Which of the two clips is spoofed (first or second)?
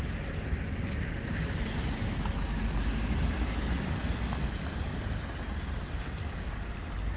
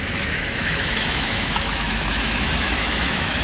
second